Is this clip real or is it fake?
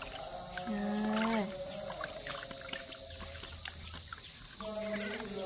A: real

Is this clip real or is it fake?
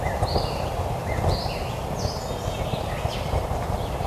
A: real